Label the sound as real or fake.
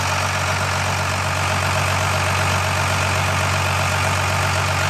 real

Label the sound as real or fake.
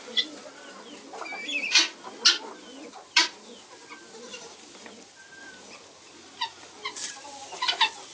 real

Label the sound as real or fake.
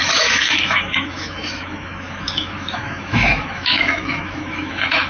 fake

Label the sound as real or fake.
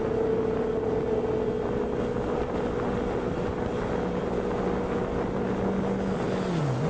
real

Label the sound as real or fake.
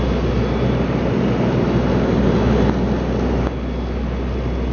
real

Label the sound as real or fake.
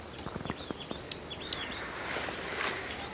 real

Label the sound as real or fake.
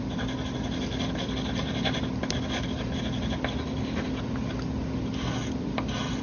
real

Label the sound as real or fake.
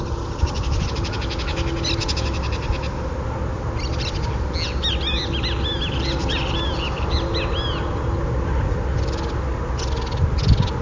real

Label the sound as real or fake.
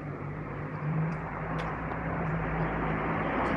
fake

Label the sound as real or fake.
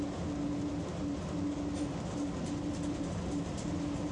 real